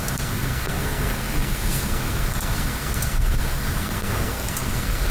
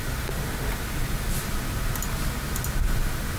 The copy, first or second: first